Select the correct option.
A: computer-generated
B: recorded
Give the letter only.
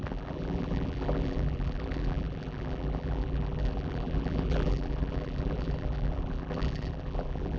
A